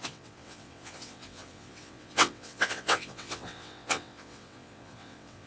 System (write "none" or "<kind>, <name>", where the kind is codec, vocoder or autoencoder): vocoder, WaveNeXt